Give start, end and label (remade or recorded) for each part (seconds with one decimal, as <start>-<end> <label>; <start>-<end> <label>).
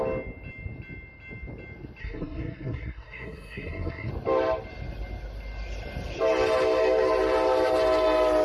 0.0-2.0 recorded; 2.0-4.1 remade; 4.1-8.4 recorded